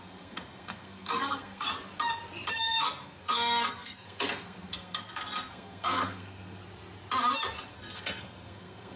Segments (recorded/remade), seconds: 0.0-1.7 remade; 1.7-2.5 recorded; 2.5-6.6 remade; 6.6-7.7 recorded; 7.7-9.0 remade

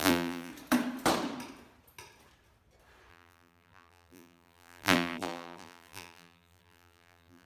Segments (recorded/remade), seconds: 0.0-0.5 remade; 0.5-3.1 recorded; 3.1-7.4 remade